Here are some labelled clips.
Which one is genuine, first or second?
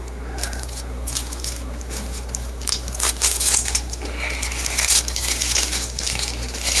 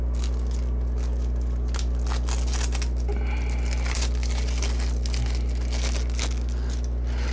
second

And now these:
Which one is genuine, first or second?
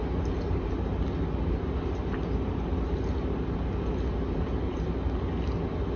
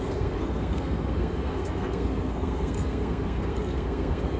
first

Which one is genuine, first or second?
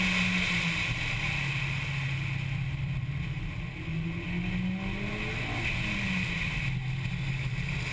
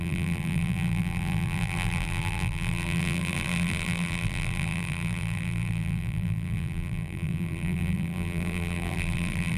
first